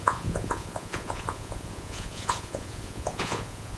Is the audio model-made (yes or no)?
yes